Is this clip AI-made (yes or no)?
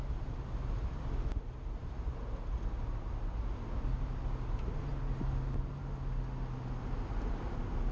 no